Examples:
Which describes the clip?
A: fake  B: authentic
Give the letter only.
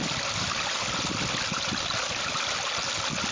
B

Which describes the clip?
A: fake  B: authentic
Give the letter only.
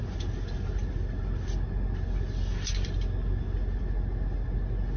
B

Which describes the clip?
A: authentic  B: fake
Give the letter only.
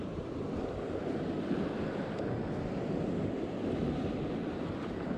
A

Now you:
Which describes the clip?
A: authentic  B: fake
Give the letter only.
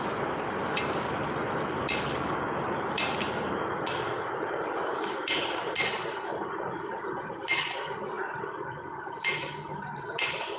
A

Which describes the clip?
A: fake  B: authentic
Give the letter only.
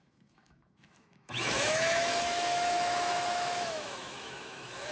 A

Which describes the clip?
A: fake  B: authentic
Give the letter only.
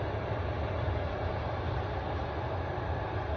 B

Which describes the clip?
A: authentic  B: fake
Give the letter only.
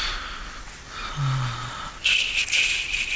A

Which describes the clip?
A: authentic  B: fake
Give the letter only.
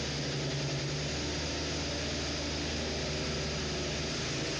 A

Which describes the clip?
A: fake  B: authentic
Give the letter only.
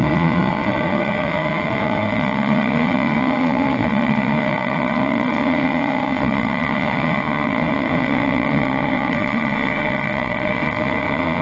A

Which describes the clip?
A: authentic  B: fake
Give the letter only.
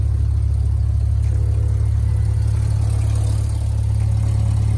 A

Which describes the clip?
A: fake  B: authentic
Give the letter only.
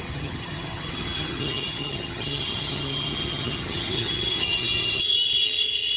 A